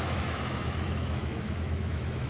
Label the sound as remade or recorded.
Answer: remade